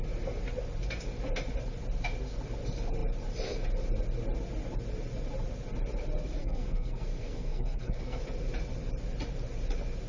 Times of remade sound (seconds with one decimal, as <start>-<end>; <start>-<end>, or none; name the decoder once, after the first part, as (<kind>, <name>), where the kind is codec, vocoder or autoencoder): 6.4-8.2 (codec, SNAC)